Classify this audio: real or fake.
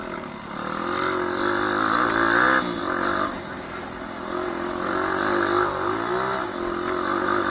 real